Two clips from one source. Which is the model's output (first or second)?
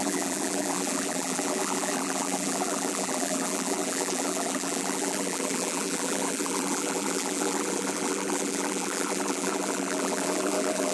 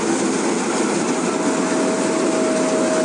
first